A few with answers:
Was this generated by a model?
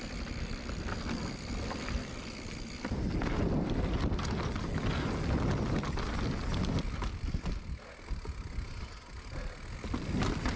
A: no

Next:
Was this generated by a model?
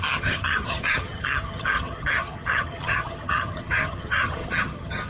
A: yes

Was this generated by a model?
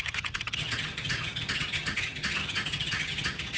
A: yes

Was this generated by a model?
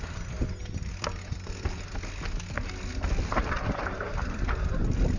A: no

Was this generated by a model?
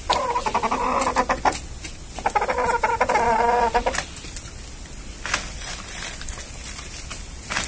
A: no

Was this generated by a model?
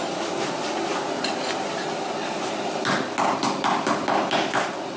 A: no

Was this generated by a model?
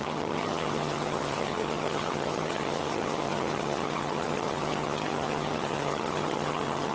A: yes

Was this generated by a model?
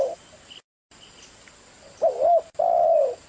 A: no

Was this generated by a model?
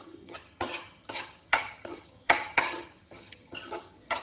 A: yes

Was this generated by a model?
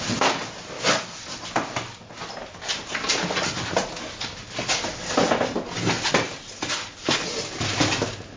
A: no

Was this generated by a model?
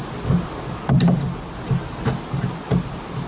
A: no